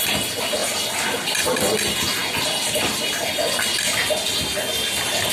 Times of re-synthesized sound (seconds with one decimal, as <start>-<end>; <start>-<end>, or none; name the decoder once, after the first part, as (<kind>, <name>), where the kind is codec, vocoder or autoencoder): none